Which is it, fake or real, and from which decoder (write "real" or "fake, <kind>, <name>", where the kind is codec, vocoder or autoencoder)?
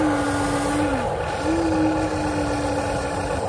real